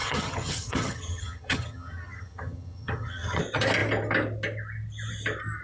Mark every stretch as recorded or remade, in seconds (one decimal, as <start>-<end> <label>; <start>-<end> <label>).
0.0-3.4 remade; 3.4-5.6 recorded